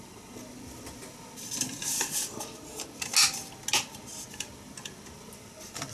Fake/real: real